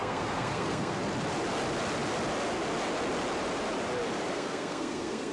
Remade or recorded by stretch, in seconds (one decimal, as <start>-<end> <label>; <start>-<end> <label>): 0.0-1.0 remade; 1.0-4.3 recorded; 4.3-5.3 remade